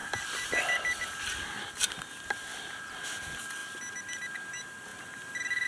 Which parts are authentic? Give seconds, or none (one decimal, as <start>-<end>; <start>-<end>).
0.0-4.9